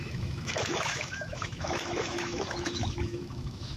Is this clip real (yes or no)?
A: no